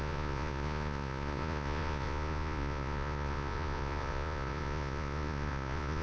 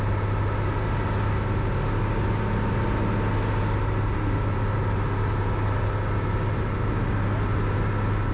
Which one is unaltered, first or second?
second